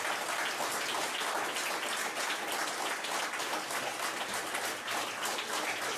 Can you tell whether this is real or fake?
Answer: real